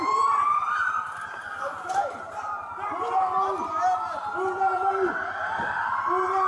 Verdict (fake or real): real